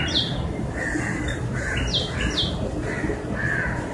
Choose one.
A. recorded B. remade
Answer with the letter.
A